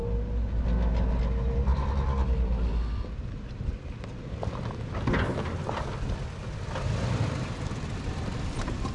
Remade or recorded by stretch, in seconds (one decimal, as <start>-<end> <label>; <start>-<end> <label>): 0.0-8.9 recorded